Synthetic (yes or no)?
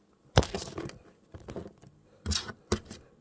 no